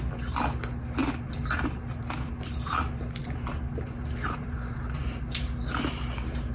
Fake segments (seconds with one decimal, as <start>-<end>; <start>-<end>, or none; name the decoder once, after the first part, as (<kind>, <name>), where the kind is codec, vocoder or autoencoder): none